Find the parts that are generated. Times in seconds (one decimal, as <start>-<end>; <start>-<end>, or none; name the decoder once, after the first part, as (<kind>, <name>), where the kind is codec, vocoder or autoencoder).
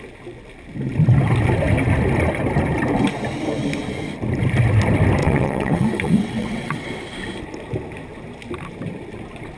5.2-7.0 (vocoder, WaveNeXt)